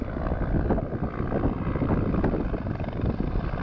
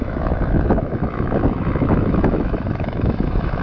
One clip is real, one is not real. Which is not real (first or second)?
second